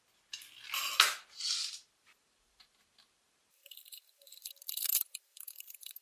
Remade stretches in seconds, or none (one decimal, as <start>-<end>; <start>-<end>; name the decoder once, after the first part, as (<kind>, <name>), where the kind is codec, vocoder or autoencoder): 1.2-4.5 (vocoder, BigVGAN v2); 4.9-6.0